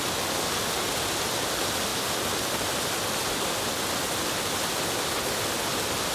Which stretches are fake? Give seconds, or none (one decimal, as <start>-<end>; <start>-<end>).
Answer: none